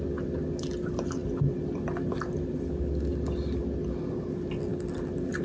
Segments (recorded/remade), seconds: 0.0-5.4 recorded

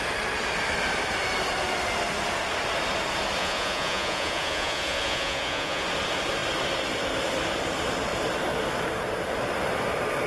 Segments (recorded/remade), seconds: 0.0-3.4 recorded; 3.4-5.8 remade; 5.8-10.3 recorded

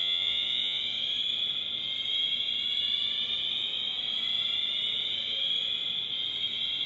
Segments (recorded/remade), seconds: 0.0-0.8 remade; 0.8-6.9 recorded

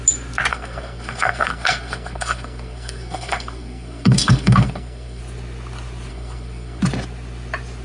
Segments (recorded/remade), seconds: 0.0-0.5 recorded; 0.5-5.2 remade; 5.2-6.1 recorded; 6.1-6.8 remade; 6.8-7.8 recorded

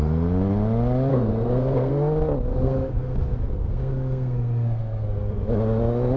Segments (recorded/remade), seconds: 0.0-1.1 recorded; 1.1-1.9 remade; 1.9-2.5 recorded; 2.5-5.2 remade; 5.2-6.2 recorded

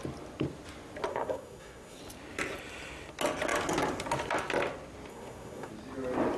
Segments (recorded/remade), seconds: 0.0-1.1 recorded; 1.1-2.0 remade; 2.0-5.1 recorded; 5.1-5.7 remade; 5.7-6.4 recorded

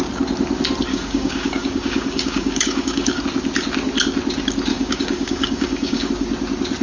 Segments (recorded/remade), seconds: 0.0-0.9 recorded; 0.9-3.2 remade; 3.2-4.7 recorded; 4.7-6.1 remade; 6.1-6.8 recorded